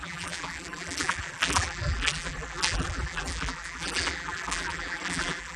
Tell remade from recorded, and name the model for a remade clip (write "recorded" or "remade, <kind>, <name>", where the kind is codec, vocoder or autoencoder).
remade, vocoder, BigVGAN v2